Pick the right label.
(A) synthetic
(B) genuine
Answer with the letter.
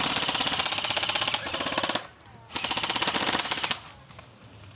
B